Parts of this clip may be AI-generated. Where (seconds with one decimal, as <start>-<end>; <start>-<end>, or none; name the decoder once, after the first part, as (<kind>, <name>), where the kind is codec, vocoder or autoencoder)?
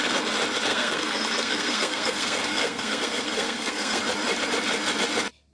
0.7-4.0 (codec, SNAC)